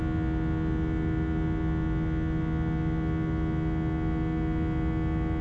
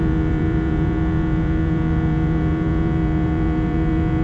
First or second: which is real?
first